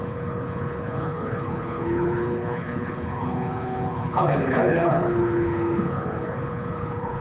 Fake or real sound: fake